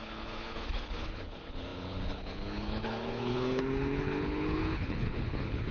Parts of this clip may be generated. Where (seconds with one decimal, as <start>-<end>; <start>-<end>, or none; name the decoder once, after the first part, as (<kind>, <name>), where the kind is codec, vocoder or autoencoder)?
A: 0.0-5.7 (codec, HILCodec)